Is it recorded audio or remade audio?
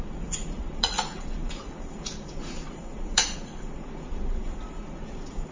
remade